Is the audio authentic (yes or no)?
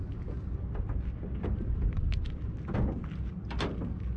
yes